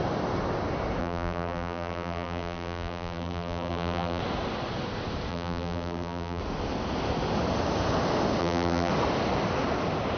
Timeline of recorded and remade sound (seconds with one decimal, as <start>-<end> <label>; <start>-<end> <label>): 0.0-1.0 recorded; 1.0-4.2 remade; 4.2-5.3 recorded; 5.3-6.4 remade; 6.4-8.4 recorded; 8.4-8.9 remade; 8.9-10.2 recorded